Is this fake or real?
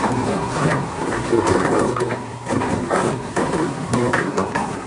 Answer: fake